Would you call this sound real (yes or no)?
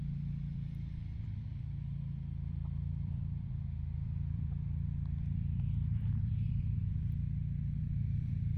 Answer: no